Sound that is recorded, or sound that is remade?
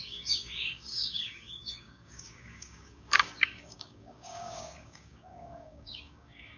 remade